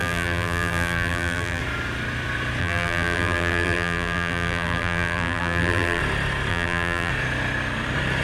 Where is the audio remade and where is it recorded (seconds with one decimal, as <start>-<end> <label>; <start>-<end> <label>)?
0.0-1.6 remade; 1.6-2.6 recorded; 2.6-6.0 remade; 6.0-6.5 recorded; 6.5-7.1 remade; 7.1-8.2 recorded

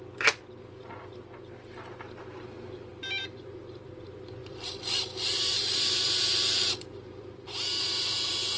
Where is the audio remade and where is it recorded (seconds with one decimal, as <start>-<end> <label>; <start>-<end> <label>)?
0.0-2.9 recorded; 2.9-3.9 remade; 3.9-4.4 recorded; 4.4-8.6 remade